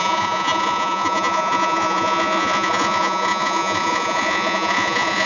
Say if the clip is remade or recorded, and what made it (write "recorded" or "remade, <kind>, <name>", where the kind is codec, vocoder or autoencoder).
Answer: remade, vocoder, Vocos